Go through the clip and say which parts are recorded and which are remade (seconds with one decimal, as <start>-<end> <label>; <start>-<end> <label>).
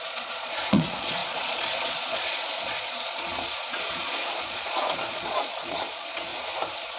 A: 0.0-6.3 remade; 6.3-7.0 recorded